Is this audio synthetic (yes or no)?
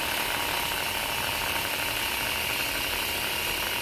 no